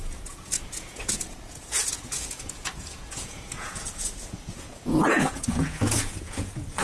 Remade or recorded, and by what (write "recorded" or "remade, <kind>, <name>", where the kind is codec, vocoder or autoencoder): remade, vocoder, Vocos